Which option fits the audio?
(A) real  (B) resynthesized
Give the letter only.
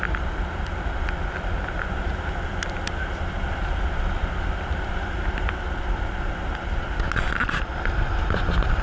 A